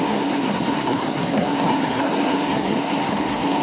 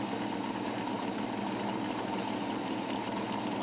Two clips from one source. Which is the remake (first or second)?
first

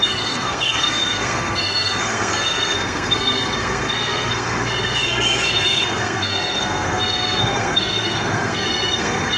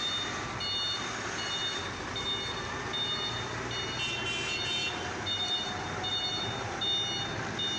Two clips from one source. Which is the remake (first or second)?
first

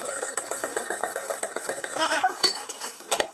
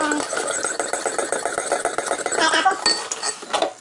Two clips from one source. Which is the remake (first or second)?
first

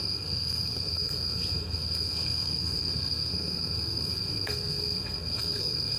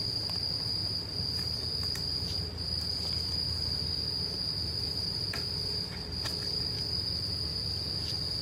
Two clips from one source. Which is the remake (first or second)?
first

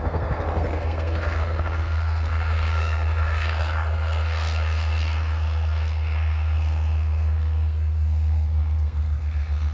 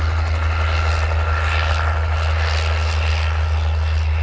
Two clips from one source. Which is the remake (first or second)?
first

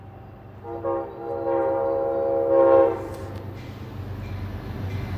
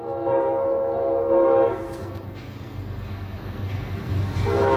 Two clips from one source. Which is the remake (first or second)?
second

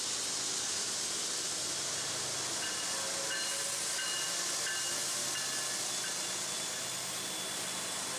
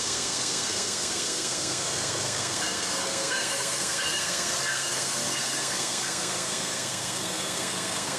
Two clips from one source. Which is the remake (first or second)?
second